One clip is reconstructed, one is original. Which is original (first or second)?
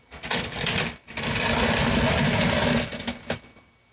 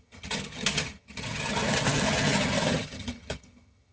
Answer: first